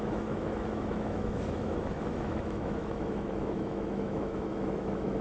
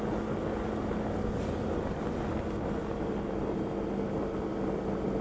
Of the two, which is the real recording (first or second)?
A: second